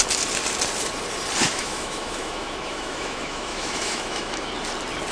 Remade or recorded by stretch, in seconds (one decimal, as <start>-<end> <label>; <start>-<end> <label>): 0.0-1.4 recorded; 1.4-4.5 remade; 4.5-5.1 recorded